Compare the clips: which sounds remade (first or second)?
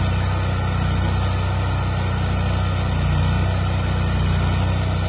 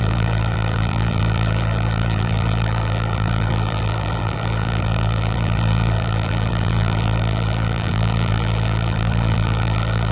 second